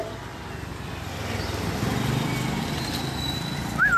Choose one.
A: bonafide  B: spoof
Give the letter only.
A